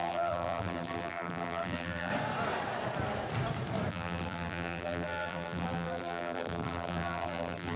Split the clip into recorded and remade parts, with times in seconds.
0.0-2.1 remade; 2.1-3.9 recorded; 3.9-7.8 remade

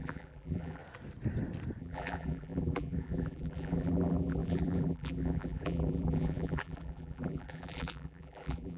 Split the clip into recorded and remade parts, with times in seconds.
0.0-0.8 remade; 0.8-1.8 recorded; 1.8-8.8 remade

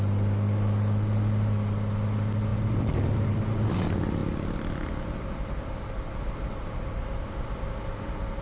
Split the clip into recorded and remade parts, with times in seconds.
0.0-8.4 recorded

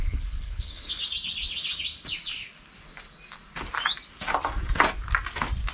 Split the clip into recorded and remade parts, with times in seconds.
0.0-0.9 remade; 0.9-5.7 recorded

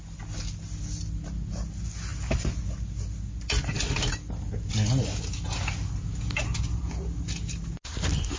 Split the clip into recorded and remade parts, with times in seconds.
0.0-8.4 recorded

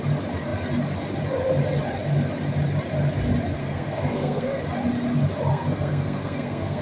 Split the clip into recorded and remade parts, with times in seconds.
0.0-3.6 recorded; 3.6-4.6 remade; 4.6-5.5 recorded; 5.5-6.8 remade

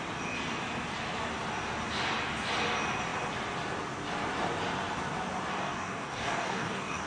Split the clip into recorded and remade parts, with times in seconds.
0.0-5.5 recorded; 5.5-7.1 remade

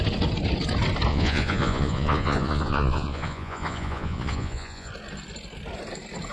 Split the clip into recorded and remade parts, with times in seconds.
0.0-1.1 recorded; 1.1-4.9 remade; 4.9-6.3 recorded